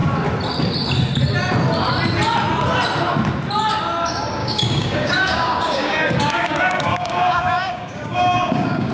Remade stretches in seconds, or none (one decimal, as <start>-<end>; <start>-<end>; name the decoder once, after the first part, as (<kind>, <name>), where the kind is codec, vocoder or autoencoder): 4.4-8.9 (codec, DAC)

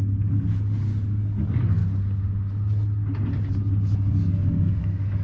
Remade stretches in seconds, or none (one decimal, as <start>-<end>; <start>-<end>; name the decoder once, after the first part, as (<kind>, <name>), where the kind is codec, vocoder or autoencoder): 0.0-1.8 (codec, DAC); 4.1-5.2

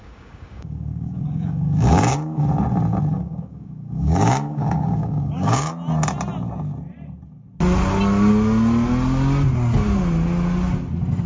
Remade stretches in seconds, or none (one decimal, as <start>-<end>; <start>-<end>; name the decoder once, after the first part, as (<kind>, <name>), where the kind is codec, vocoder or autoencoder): 0.0-2.4 (codec, DAC); 3.1-5.7